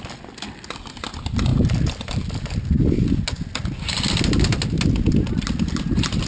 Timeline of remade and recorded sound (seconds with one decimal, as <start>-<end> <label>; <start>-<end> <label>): 0.0-6.3 recorded